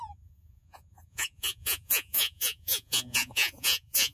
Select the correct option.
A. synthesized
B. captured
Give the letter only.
A